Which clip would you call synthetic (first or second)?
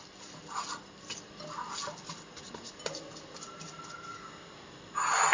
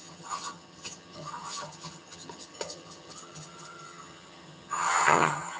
second